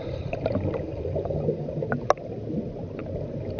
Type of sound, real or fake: real